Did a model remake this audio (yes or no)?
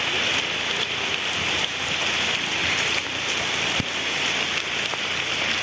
no